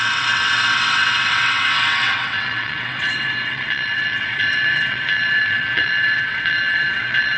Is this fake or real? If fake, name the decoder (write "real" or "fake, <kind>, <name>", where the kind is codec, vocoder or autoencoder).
fake, vocoder, WaveNeXt